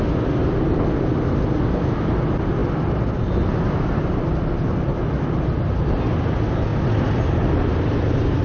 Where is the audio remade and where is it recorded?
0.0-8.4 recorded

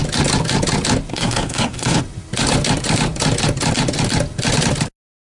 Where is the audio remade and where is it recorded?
0.0-1.1 recorded; 1.1-2.0 remade; 2.0-5.2 recorded

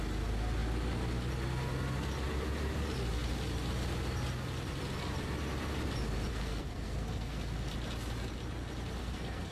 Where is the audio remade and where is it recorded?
0.0-6.3 recorded; 6.3-7.7 remade; 7.7-9.0 recorded; 9.0-9.5 remade